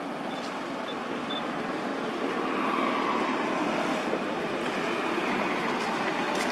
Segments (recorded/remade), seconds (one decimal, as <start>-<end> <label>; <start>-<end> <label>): 0.0-1.9 recorded; 1.9-5.7 remade; 5.7-6.5 recorded